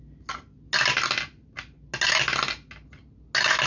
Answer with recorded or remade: recorded